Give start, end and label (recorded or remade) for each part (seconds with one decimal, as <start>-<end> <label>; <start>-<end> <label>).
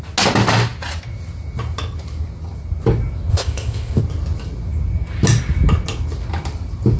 0.0-3.3 recorded; 3.3-4.0 remade; 4.0-7.0 recorded